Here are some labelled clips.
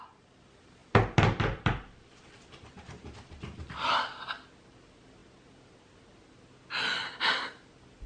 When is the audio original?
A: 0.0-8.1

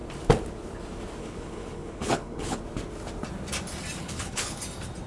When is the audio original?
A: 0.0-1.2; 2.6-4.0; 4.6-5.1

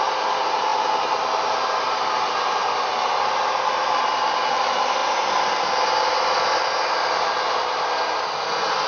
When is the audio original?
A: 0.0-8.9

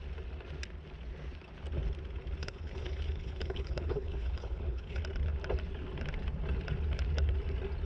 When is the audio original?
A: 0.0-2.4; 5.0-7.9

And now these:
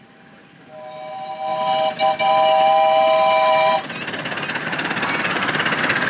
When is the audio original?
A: 0.0-6.1

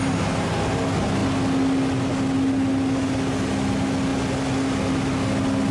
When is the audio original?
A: 0.0-5.7